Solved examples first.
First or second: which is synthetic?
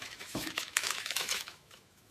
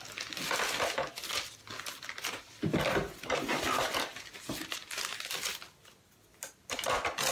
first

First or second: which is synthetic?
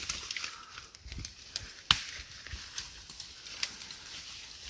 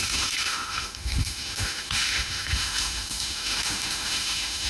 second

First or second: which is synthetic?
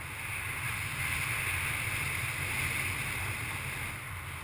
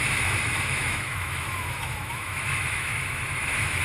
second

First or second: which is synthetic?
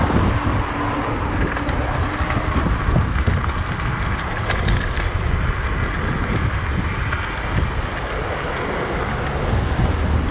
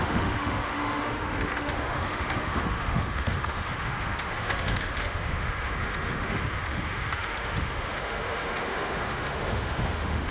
second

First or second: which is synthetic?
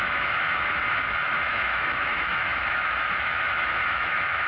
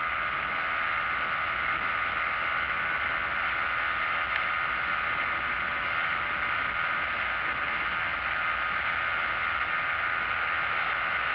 first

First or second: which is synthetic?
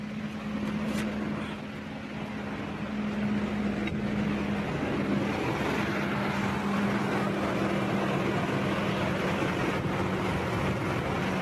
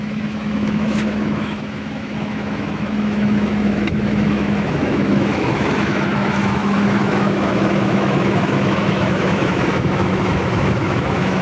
second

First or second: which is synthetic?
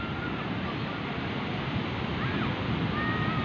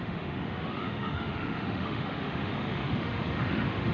second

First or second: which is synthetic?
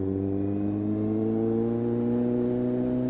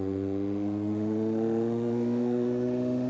second